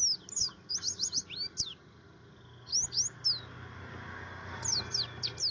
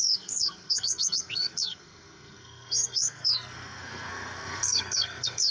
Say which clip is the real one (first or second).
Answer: first